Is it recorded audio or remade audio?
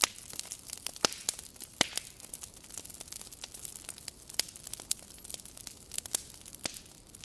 recorded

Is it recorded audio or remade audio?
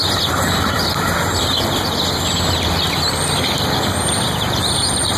recorded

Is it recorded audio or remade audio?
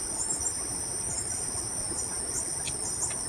remade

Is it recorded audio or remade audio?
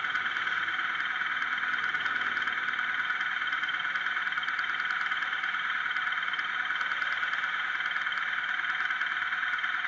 recorded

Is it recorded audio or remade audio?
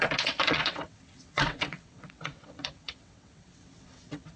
remade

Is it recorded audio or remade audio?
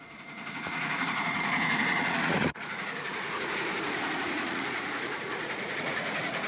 remade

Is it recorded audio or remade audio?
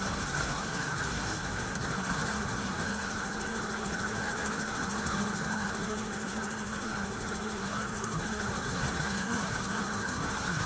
remade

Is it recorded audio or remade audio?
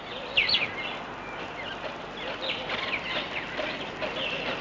recorded